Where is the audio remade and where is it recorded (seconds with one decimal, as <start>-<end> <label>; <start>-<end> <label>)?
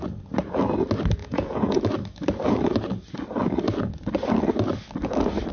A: 0.0-1.2 recorded; 1.2-1.8 remade; 1.8-5.5 recorded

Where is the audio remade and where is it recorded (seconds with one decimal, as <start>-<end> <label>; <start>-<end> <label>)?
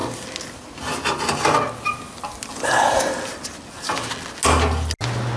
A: 0.0-5.4 recorded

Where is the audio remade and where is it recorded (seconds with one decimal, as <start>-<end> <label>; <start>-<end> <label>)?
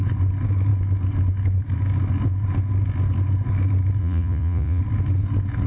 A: 0.0-4.0 recorded; 4.0-4.8 remade; 4.8-5.7 recorded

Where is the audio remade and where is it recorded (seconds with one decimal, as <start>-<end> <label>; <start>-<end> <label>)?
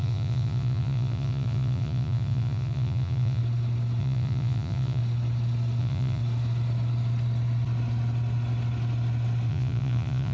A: 0.0-3.4 remade; 3.4-4.0 recorded; 4.0-5.0 remade; 5.0-5.8 recorded; 5.8-6.2 remade; 6.2-9.5 recorded; 9.5-10.3 remade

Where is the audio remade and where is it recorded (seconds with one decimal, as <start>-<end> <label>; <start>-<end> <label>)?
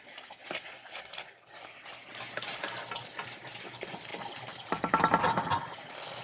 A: 0.0-6.2 recorded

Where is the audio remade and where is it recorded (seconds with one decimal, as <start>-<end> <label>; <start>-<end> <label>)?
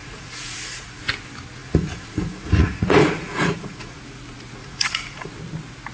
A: 0.0-1.0 remade; 1.0-1.6 recorded; 1.6-4.0 remade; 4.0-4.6 recorded; 4.6-5.3 remade; 5.3-5.9 recorded